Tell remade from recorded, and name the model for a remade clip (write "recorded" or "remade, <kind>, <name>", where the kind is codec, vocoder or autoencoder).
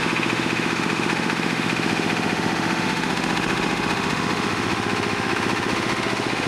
remade, autoencoder, DAC-VAE